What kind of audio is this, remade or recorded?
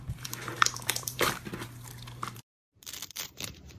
remade